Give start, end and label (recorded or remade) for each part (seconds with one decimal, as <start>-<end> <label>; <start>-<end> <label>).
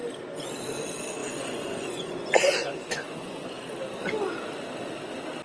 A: 0.0-1.2 recorded; 1.2-3.6 remade; 3.6-5.4 recorded